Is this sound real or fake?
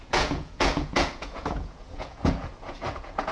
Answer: fake